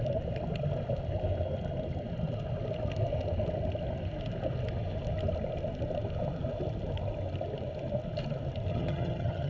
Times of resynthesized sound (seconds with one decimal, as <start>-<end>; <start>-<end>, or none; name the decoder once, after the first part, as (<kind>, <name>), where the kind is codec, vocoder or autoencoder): 8.7-9.5 (vocoder, HiFi-GAN)